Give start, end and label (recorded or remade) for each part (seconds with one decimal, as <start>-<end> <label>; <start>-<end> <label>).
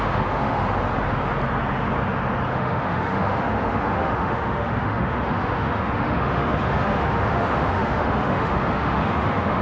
0.0-0.6 remade; 0.6-2.5 recorded; 2.5-9.6 remade